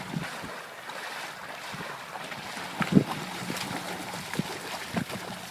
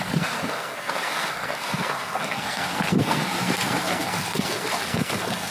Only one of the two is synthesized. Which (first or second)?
second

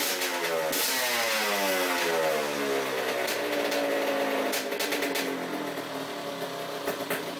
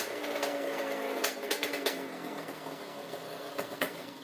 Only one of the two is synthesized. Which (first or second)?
second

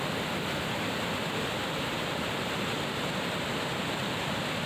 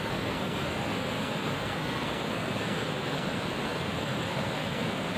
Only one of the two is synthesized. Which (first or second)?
second